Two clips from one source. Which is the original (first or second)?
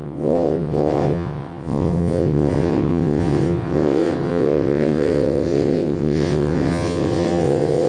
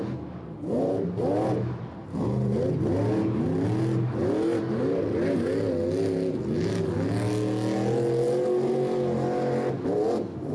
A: second